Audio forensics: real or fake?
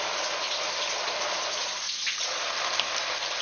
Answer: real